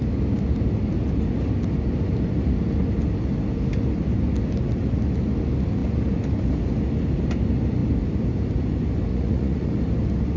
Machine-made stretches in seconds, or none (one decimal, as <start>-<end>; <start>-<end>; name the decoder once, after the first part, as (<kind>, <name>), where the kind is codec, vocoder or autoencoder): 9.1-9.7 (vocoder, Vocos)